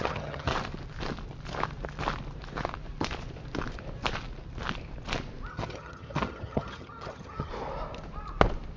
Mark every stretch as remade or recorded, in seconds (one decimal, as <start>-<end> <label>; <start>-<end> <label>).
0.0-0.5 remade; 0.5-5.5 recorded; 5.5-7.5 remade; 7.5-8.8 recorded